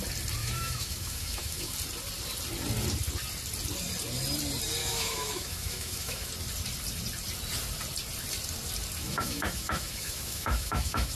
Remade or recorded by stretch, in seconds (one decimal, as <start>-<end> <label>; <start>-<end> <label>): 0.0-0.4 recorded; 0.4-1.7 remade; 1.7-4.8 recorded; 4.8-6.3 remade; 6.3-9.0 recorded; 9.0-11.1 remade